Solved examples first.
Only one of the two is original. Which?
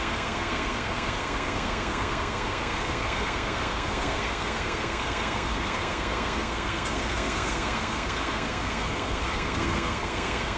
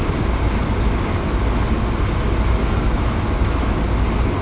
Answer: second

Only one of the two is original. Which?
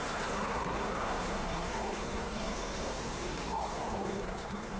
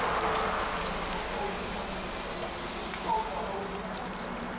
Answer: second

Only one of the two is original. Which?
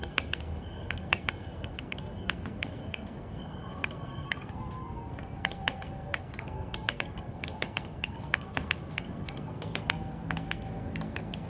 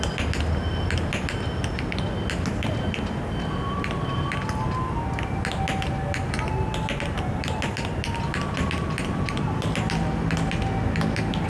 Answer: second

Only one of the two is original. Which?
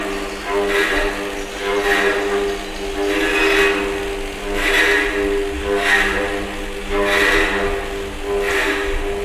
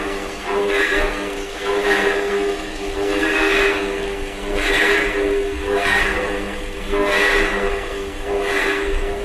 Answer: first